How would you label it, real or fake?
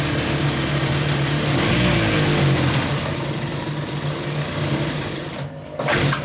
real